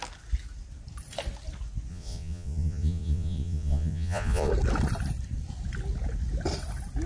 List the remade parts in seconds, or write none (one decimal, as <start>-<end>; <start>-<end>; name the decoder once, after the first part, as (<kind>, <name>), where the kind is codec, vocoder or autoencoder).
1.9-4.5 (vocoder, Vocos)